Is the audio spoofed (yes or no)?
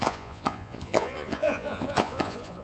yes